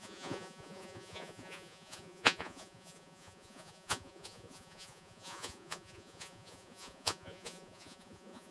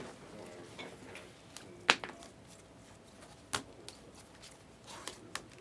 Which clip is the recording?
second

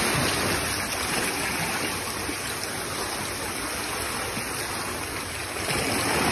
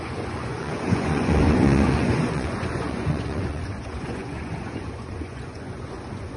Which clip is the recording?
first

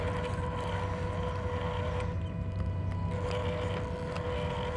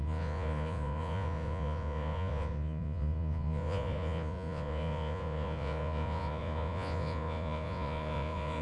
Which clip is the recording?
first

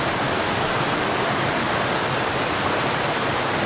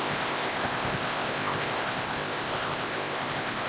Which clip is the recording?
first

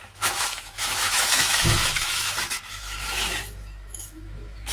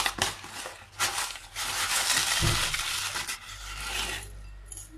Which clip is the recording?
second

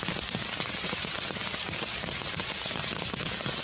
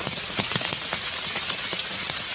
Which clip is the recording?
first